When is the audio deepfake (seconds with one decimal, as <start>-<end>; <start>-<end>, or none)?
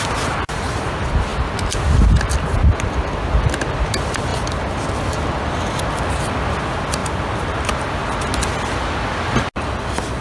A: none